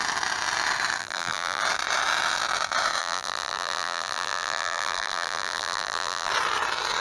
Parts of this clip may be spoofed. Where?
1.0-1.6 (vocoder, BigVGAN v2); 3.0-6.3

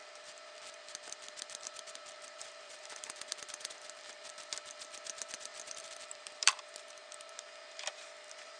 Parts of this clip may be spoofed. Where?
0.0-3.7 (vocoder, BigVGAN v2); 5.5-6.6

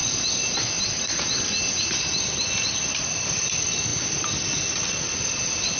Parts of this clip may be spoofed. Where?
none

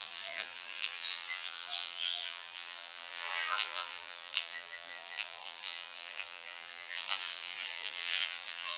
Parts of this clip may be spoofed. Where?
0.0-8.8 (vocoder, BigVGAN v2)

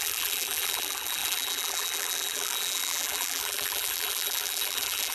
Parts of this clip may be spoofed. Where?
0.0-5.1 (vocoder, BigVGAN v2)

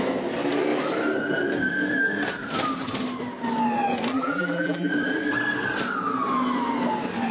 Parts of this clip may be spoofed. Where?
4.1-4.9 (vocoder, BigVGAN v2)

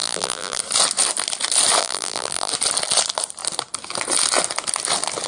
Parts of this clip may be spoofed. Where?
0.0-0.6 (vocoder, BigVGAN v2); 1.8-2.5